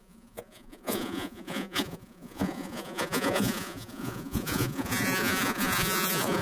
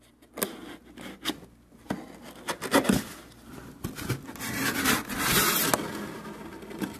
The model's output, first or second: first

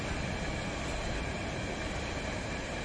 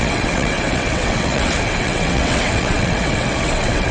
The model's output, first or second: second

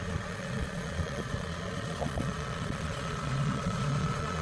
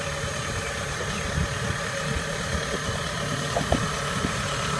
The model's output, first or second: first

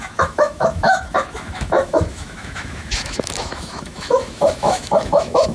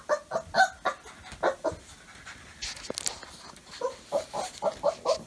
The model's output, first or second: first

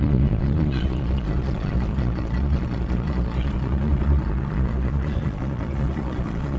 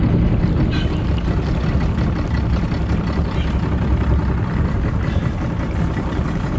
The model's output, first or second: first